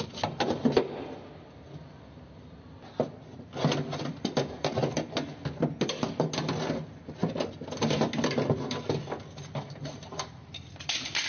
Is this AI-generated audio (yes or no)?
no